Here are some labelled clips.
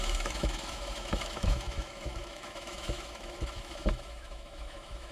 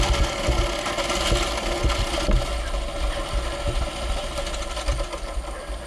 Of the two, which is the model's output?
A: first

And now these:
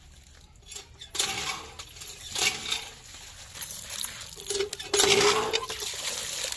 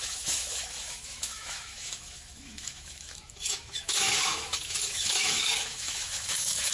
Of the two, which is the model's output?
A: second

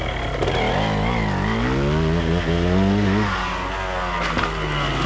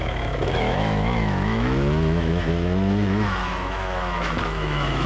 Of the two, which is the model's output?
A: second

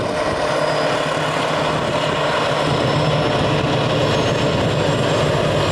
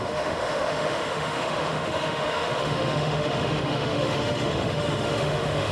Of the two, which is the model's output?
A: second